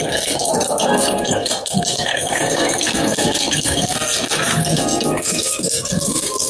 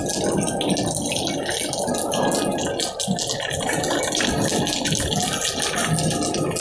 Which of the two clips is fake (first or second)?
first